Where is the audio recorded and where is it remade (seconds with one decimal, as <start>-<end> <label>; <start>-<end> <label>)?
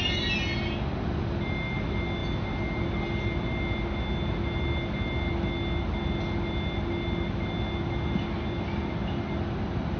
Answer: 0.0-10.0 recorded